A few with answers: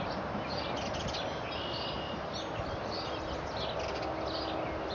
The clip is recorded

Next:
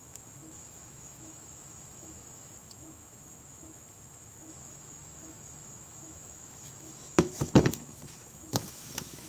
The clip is remade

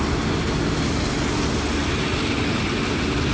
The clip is recorded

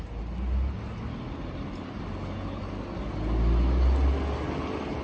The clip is recorded